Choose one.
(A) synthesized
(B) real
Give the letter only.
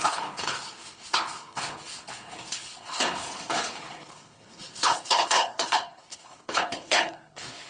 A